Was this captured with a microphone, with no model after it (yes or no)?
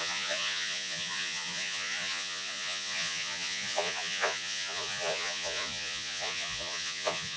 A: no